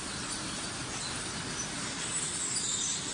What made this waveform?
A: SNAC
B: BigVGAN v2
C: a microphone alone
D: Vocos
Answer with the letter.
C